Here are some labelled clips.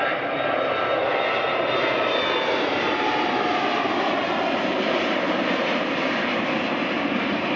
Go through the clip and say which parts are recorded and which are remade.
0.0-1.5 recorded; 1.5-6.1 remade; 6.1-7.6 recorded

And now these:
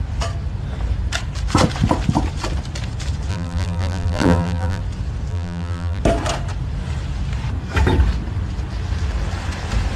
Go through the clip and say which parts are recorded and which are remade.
0.0-3.3 recorded; 3.3-4.8 remade; 4.8-5.3 recorded; 5.3-6.0 remade; 6.0-10.0 recorded